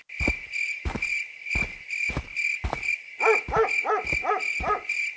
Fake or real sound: real